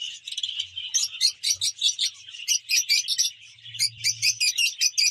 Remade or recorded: recorded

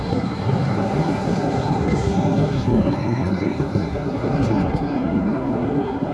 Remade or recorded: remade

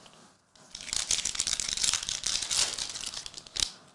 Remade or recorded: recorded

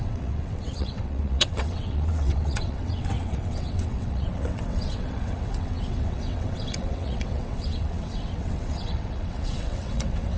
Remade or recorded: remade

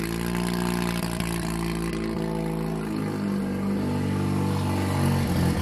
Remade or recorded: recorded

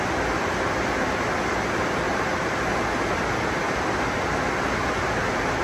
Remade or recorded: recorded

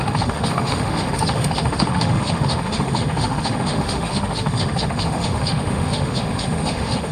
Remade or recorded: remade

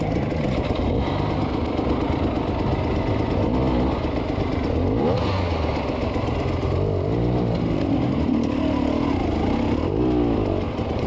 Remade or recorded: recorded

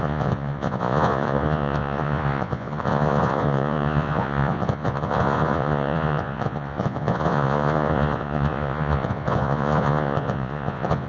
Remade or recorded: remade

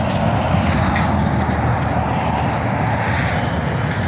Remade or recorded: recorded